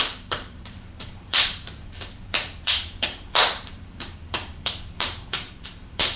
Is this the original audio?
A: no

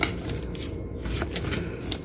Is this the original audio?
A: yes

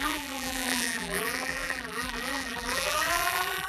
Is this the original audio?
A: no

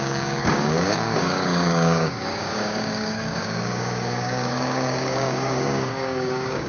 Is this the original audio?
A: no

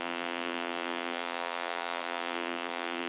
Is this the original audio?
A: no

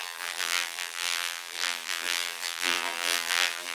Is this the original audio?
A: no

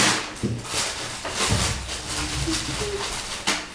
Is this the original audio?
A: yes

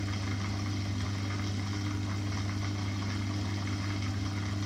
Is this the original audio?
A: yes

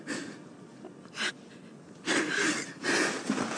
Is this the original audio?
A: yes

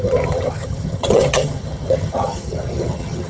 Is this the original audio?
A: no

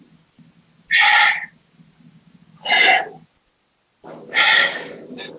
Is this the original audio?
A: yes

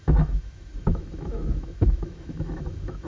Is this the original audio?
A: no